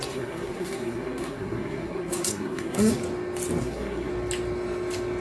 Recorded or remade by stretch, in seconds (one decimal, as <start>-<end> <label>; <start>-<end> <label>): 0.0-3.0 remade; 3.0-3.6 recorded; 3.6-4.1 remade; 4.1-5.2 recorded